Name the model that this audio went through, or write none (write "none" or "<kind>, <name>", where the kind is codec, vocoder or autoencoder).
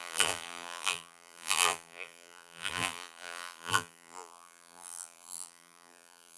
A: vocoder, BigVGAN v2